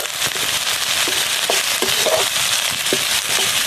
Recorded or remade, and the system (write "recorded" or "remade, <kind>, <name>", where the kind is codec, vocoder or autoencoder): remade, vocoder, BigVGAN v2